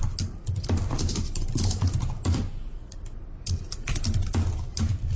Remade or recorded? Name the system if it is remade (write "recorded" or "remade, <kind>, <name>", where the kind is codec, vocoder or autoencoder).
recorded